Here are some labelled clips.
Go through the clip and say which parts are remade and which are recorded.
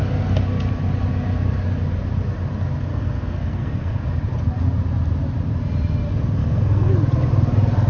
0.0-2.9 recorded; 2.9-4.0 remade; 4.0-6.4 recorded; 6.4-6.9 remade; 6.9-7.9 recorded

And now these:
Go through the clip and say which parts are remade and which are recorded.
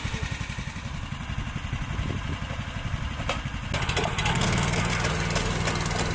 0.0-4.3 recorded; 4.3-4.8 remade; 4.8-6.1 recorded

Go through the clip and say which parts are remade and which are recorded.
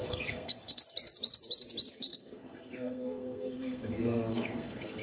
0.0-0.8 remade; 0.8-1.9 recorded; 1.9-5.0 remade